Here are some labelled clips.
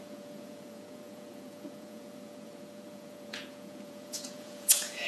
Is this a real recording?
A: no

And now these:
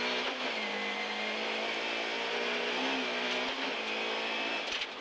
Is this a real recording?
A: yes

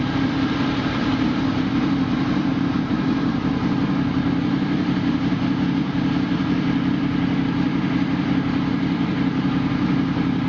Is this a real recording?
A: no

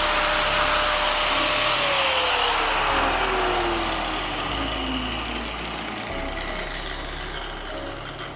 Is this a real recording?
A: yes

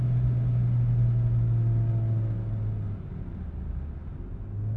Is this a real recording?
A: yes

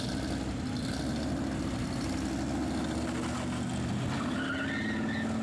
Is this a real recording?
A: yes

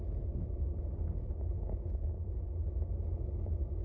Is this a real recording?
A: yes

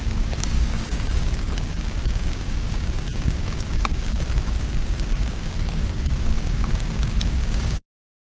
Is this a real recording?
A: no